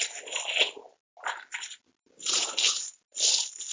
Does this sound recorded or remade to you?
recorded